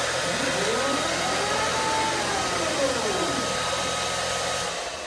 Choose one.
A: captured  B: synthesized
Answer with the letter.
A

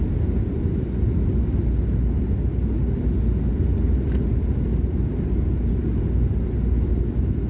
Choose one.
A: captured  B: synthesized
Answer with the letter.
A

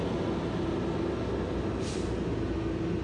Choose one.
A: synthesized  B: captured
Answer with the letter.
B